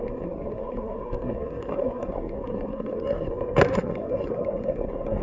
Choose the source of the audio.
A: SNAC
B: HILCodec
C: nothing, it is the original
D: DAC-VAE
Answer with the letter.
A